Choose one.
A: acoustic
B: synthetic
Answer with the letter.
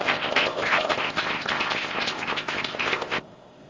B